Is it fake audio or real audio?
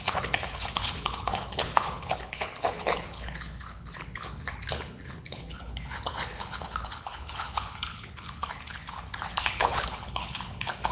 fake